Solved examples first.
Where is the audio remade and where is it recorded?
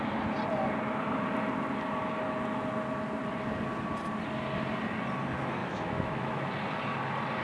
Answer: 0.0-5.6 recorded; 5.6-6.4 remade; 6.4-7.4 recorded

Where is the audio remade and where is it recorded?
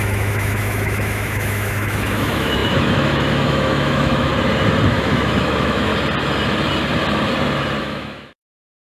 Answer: 0.0-4.3 remade; 4.3-4.9 recorded; 4.9-5.9 remade; 5.9-7.8 recorded; 7.8-8.9 remade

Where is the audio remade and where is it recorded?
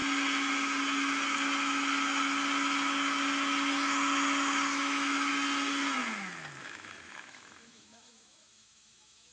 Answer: 0.0-4.8 recorded; 4.8-5.3 remade; 5.3-6.6 recorded; 6.6-9.3 remade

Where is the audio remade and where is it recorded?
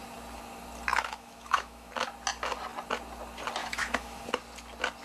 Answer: 0.0-0.9 recorded; 0.9-1.9 remade; 1.9-3.6 recorded; 3.6-4.2 remade; 4.2-5.0 recorded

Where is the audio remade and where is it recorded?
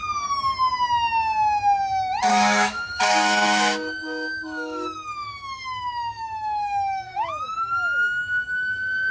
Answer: 0.0-2.3 recorded; 2.3-9.1 remade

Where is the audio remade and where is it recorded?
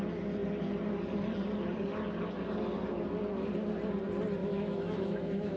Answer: 0.0-4.4 recorded; 4.4-5.6 remade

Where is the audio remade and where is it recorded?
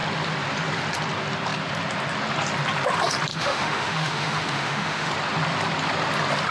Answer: 0.0-3.3 recorded; 3.3-5.1 remade; 5.1-6.5 recorded